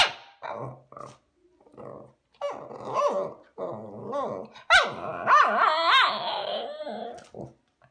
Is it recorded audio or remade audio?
recorded